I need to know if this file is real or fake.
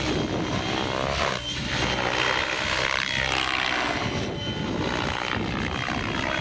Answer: real